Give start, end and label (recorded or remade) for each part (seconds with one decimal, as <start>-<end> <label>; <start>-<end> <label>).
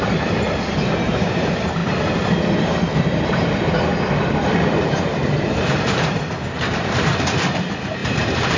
0.0-1.8 remade; 1.8-2.9 recorded; 2.9-3.9 remade; 3.9-4.5 recorded; 4.5-8.6 remade